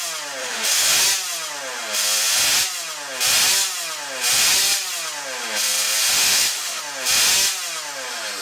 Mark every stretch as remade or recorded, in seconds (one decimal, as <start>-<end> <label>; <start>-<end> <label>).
0.0-0.4 recorded; 0.4-1.0 remade; 1.0-6.2 recorded; 6.2-6.8 remade; 6.8-8.4 recorded

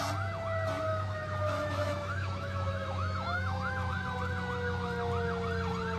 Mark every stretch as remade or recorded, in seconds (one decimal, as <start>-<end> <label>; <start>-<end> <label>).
0.0-0.9 recorded; 0.9-3.9 remade; 3.9-6.0 recorded

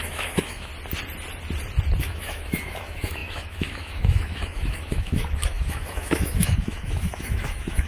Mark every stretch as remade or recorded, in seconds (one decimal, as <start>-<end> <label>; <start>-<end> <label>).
0.0-0.7 remade; 0.7-2.0 recorded; 2.0-7.9 remade

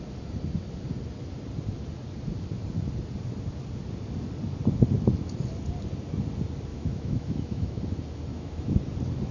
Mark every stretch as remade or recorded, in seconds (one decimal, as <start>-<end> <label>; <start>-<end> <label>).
0.0-6.7 recorded; 6.7-7.8 remade; 7.8-8.3 recorded; 8.3-8.8 remade; 8.8-9.3 recorded

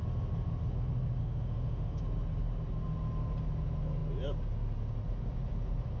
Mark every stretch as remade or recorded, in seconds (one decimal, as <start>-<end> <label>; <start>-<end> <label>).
0.0-1.2 recorded; 1.2-2.0 remade; 2.0-6.0 recorded

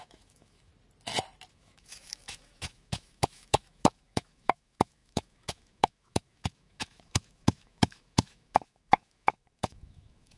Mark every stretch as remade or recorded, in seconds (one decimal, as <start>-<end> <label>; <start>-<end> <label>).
0.0-0.7 remade; 0.7-1.5 recorded; 1.5-10.4 remade

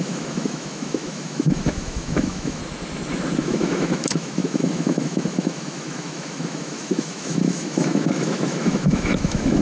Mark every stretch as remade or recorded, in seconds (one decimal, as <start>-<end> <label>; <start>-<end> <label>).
0.0-2.6 remade; 2.6-3.4 recorded; 3.4-9.6 remade

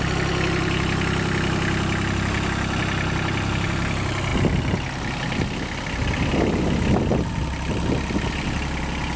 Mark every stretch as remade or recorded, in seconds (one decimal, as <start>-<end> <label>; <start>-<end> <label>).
0.0-9.2 recorded